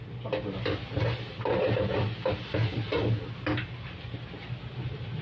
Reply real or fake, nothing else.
real